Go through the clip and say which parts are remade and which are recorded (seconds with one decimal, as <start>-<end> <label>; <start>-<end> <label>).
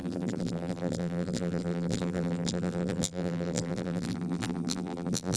0.0-5.4 remade